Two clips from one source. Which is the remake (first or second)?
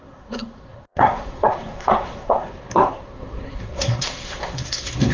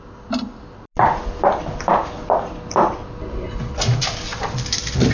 first